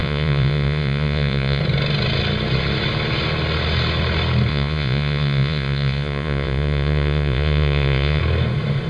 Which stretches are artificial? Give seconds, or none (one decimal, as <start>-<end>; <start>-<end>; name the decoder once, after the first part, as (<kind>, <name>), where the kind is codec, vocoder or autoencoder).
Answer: 0.0-1.6 (vocoder, Vocos); 4.5-8.2